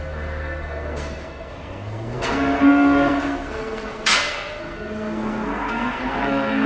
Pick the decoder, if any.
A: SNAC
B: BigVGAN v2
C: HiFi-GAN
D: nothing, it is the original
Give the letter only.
A